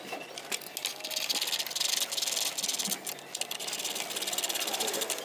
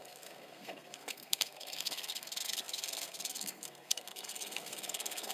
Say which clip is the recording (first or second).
first